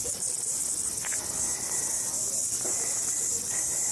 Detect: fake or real fake